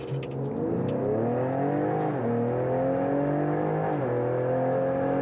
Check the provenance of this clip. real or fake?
real